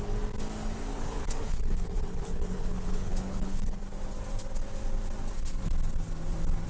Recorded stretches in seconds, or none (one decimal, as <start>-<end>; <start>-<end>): 0.0-0.9; 3.8-6.7